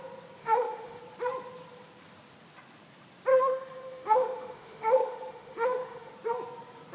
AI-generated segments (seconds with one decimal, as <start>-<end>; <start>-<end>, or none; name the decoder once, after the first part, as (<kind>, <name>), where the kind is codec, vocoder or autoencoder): 0.4-1.0 (autoencoder, DAC-VAE); 3.3-6.1